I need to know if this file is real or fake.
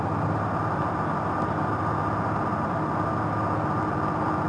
real